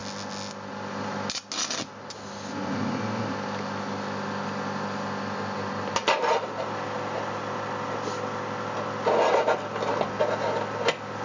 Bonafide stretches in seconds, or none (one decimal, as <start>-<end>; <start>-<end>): 0.0-11.2

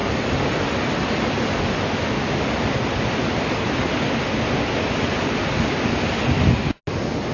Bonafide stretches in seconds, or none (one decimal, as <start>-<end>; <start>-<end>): 0.0-7.3

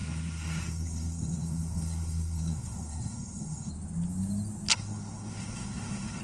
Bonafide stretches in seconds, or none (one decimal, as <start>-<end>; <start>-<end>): 3.7-4.7

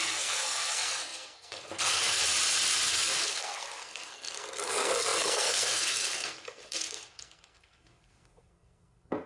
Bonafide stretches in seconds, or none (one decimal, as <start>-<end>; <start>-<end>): 2.2-2.9

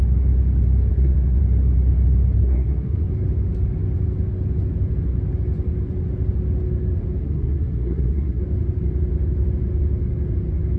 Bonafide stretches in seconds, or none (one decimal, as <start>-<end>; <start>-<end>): 0.0-0.9; 1.4-2.4; 3.1-7.2; 8.4-10.8